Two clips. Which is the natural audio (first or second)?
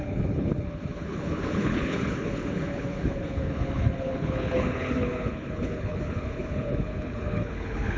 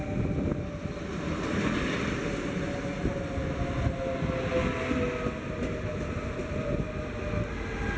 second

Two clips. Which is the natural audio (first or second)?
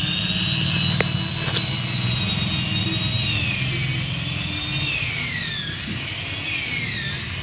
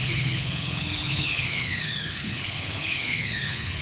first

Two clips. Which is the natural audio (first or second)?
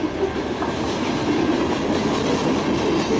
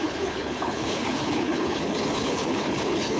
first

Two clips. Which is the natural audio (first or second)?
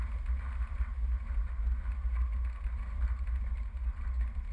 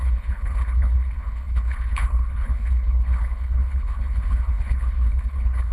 first